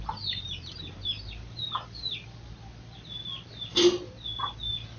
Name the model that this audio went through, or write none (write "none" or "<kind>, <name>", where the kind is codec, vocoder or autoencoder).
none